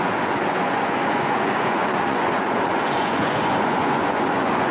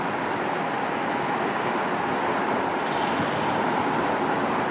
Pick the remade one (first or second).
first